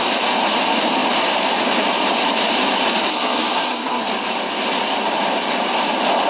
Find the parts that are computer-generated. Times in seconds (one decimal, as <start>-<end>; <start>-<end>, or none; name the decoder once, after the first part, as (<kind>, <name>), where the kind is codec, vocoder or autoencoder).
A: 3.1-4.1 (codec, SNAC)